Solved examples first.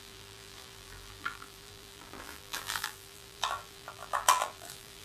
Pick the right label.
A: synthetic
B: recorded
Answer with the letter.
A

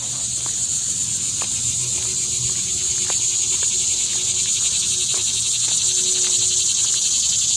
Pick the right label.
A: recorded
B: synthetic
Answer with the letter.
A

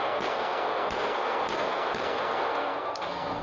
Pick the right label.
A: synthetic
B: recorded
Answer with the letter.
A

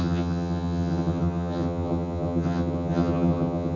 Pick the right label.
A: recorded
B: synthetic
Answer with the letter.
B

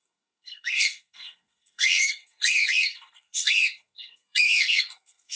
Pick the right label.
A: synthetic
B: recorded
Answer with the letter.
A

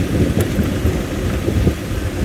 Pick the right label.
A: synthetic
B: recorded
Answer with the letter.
B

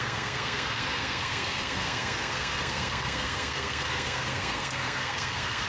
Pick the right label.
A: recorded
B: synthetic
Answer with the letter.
B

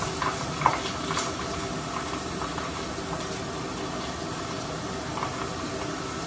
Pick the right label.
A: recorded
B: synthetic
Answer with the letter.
A